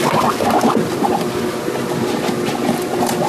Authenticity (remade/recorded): recorded